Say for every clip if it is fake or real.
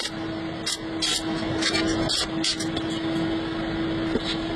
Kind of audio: real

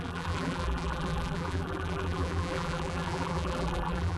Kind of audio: fake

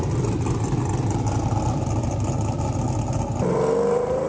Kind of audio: fake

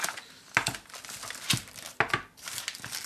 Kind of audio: real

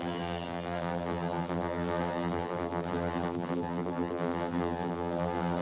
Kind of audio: fake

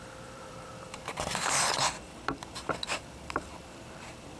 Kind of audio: fake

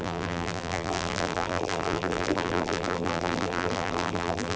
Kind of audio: fake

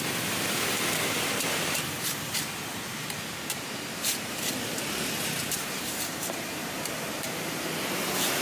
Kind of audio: fake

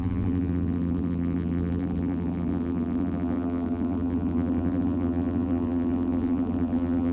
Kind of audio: fake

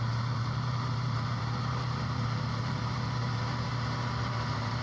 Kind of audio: fake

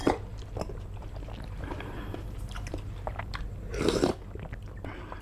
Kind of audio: real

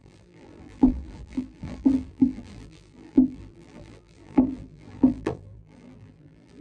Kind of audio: fake